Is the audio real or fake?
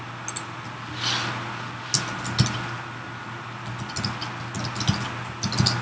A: real